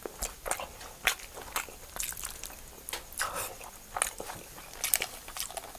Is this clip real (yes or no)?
yes